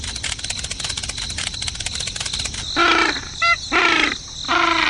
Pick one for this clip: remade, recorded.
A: recorded